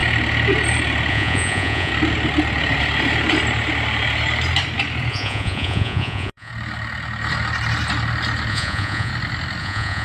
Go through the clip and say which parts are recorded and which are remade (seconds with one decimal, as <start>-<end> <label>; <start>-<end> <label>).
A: 0.0-1.1 recorded; 1.1-1.9 remade; 1.9-5.1 recorded; 5.1-6.5 remade; 6.5-8.5 recorded; 8.5-9.1 remade; 9.1-9.6 recorded; 9.6-10.0 remade